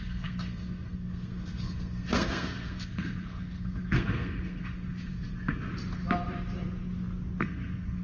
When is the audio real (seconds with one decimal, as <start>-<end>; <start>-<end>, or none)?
5.7-7.4